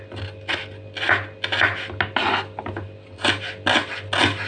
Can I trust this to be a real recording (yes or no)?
yes